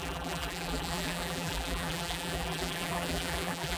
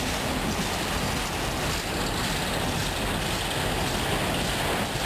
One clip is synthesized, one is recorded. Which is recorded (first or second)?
second